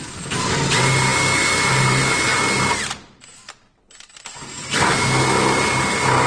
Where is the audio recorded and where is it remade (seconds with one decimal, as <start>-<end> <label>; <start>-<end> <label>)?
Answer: 0.0-6.3 recorded